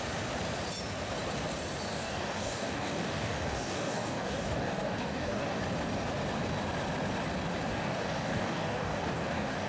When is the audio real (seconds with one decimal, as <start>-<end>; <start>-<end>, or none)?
0.0-1.9; 5.6-7.7